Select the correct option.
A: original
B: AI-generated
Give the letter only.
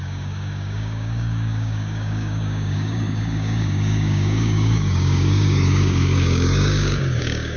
B